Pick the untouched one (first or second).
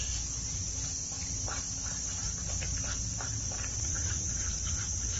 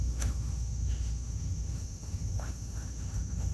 first